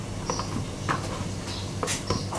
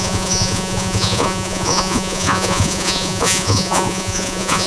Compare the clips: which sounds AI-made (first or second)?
second